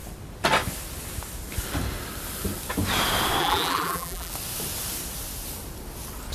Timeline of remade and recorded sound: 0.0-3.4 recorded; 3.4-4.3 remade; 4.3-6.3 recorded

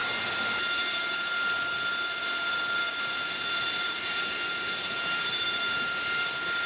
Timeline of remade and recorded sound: 0.0-6.7 recorded